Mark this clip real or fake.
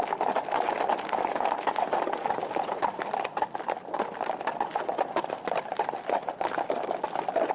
real